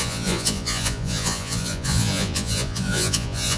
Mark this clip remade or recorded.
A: remade